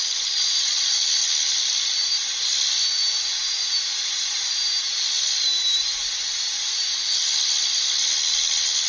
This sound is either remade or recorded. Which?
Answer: recorded